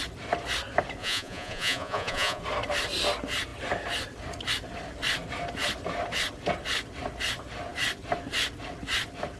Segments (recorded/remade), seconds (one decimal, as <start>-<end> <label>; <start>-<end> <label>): 0.0-1.0 recorded; 1.0-2.4 remade; 2.4-9.4 recorded